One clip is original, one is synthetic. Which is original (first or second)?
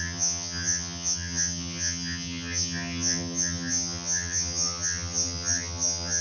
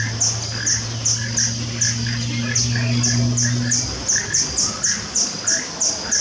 second